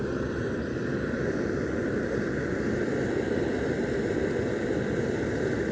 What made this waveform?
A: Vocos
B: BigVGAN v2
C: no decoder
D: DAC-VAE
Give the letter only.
C